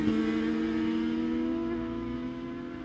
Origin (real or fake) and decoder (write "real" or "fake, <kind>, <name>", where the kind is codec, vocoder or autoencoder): real